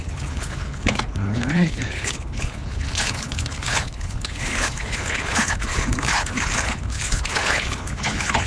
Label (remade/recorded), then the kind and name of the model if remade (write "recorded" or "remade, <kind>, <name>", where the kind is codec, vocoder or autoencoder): remade, codec, HILCodec